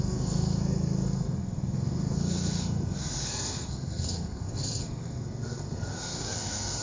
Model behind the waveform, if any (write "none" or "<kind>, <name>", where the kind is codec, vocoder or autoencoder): codec, SNAC